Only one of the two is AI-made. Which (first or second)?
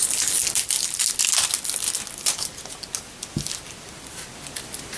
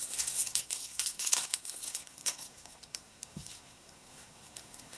second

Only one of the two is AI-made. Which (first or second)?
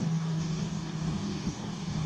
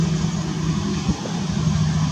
first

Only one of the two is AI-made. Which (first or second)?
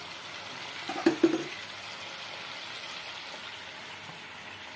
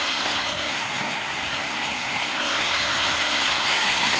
second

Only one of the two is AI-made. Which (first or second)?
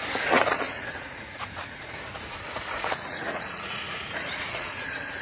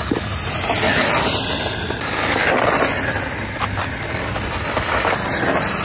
first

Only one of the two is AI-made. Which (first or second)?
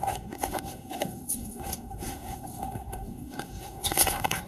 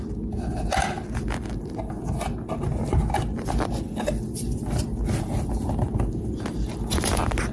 first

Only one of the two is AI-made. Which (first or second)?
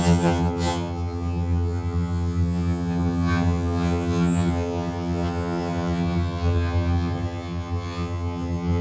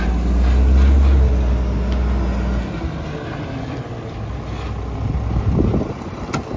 first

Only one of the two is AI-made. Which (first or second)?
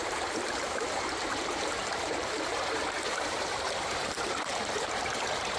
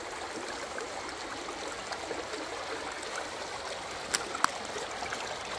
first